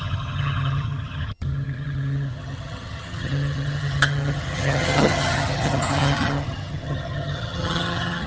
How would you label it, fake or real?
fake